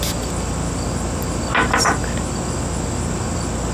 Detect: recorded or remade recorded